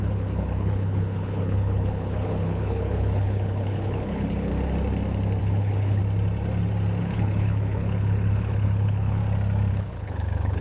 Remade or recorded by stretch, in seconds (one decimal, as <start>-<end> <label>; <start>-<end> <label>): 0.0-4.5 remade; 4.5-5.4 recorded; 5.4-6.0 remade; 6.0-7.0 recorded; 7.0-9.2 remade; 9.2-9.7 recorded; 9.7-10.6 remade